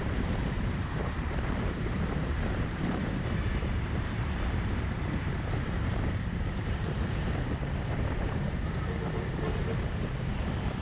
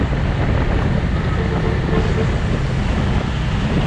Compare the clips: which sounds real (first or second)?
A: second